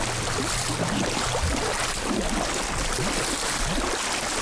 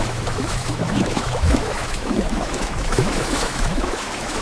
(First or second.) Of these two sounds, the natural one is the first